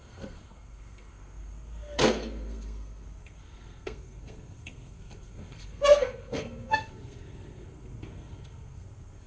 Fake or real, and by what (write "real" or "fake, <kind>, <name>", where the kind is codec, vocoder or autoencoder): fake, codec, SNAC